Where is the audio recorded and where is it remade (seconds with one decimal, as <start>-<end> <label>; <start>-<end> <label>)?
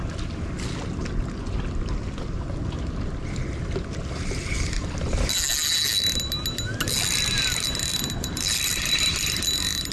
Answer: 0.0-7.9 recorded; 7.9-9.0 remade; 9.0-9.9 recorded